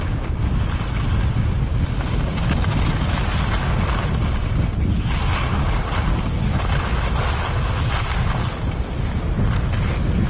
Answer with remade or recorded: recorded